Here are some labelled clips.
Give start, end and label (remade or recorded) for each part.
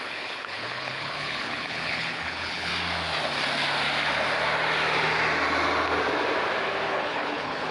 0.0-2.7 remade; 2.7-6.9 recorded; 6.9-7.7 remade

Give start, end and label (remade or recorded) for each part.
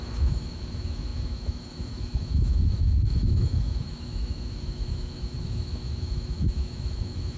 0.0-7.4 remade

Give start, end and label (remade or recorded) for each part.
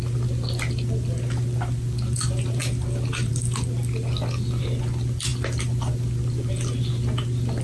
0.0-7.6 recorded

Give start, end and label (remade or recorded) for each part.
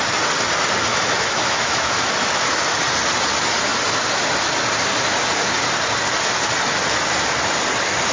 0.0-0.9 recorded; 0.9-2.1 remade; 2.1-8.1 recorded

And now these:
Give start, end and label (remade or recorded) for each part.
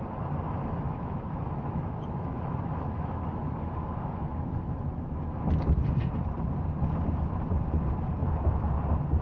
0.0-0.6 recorded; 0.6-5.5 remade; 5.5-8.2 recorded; 8.2-8.7 remade; 8.7-9.2 recorded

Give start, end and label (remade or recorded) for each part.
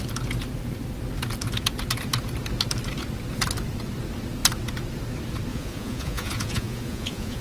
0.0-5.5 recorded; 5.5-7.4 remade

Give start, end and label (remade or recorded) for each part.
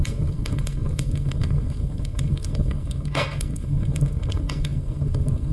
0.0-5.5 remade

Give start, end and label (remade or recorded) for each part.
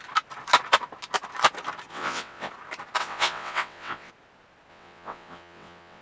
0.0-1.9 recorded; 1.9-2.5 remade; 2.5-3.0 recorded; 3.0-4.1 remade; 4.1-4.7 recorded; 4.7-6.0 remade